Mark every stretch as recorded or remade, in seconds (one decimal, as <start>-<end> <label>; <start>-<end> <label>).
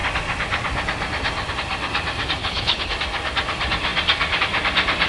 0.0-2.4 recorded; 2.4-2.9 remade; 2.9-5.1 recorded